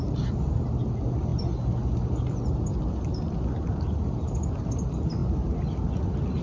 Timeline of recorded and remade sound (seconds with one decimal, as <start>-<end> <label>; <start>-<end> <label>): 0.0-6.4 recorded